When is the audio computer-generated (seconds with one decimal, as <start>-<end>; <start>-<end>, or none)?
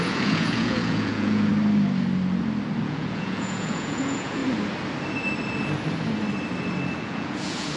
0.0-1.5; 2.8-4.4; 7.0-7.8